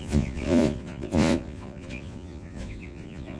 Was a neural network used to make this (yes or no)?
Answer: yes